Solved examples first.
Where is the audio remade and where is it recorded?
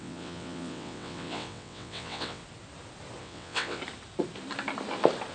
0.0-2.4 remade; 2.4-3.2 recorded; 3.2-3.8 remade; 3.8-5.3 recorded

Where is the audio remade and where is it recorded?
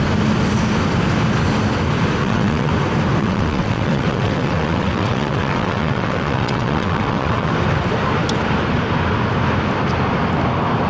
0.0-2.2 recorded; 2.2-2.7 remade; 2.7-3.2 recorded; 3.2-7.5 remade; 7.5-10.9 recorded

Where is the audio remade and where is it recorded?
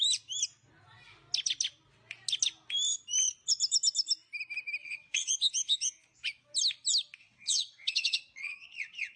0.0-4.8 recorded; 4.8-5.3 remade; 5.3-7.2 recorded; 7.2-9.2 remade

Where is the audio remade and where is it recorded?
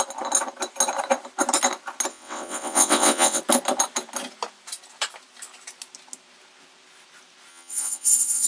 0.0-2.1 recorded; 2.1-3.4 remade; 3.4-7.5 recorded; 7.5-8.5 remade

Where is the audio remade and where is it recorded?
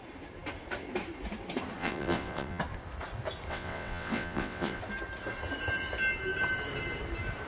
0.0-1.8 recorded; 1.8-2.6 remade; 2.6-3.5 recorded; 3.5-4.8 remade; 4.8-7.5 recorded